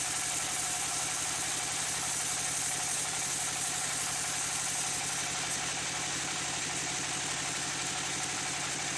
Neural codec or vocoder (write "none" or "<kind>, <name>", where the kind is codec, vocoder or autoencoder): vocoder, BigVGAN v2